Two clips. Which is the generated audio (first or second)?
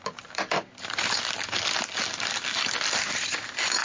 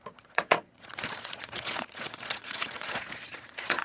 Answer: second